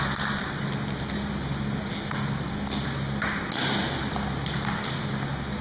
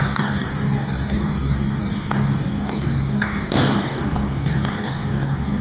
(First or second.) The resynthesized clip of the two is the second